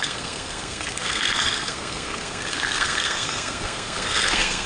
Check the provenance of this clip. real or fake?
fake